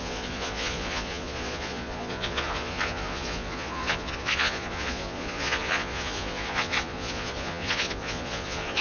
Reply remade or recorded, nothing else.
remade